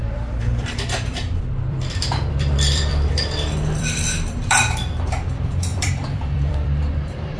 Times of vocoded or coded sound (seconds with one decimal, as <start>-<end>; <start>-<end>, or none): 0.0-7.4